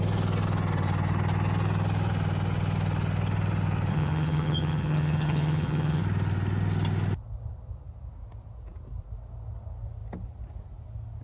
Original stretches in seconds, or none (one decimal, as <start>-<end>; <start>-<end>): 0.0-3.9; 6.0-11.2